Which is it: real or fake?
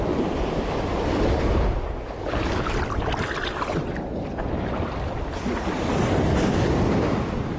real